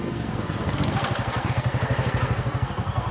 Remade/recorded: remade